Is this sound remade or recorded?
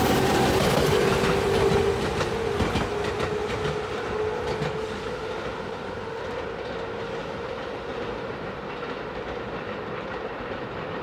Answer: recorded